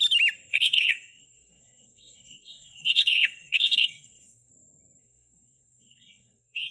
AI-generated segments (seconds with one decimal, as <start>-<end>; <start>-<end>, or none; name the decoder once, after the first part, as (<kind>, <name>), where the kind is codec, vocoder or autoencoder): 0.5-4.5 (codec, SNAC); 5.0-6.7